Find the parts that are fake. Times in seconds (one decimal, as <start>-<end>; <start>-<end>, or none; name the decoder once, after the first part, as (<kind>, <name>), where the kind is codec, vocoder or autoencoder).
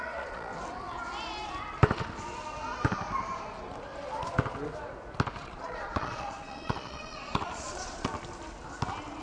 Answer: 0.0-0.5 (vocoder, Vocos); 5.4-8.1